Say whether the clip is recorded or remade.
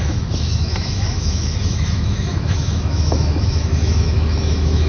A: remade